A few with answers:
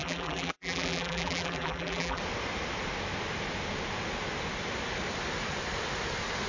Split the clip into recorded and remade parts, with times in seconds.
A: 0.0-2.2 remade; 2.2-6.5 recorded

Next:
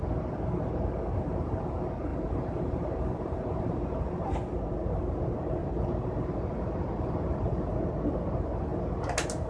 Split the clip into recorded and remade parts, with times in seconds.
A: 0.0-2.1 recorded; 2.1-4.6 remade; 4.6-5.6 recorded; 5.6-7.7 remade; 7.7-9.5 recorded

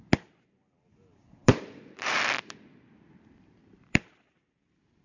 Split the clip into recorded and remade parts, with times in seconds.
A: 0.0-1.4 recorded; 1.4-4.4 remade; 4.4-5.0 recorded